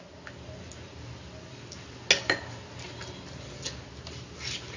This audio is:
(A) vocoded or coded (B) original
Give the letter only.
B